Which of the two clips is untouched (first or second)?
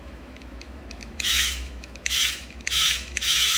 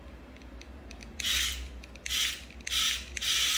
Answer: second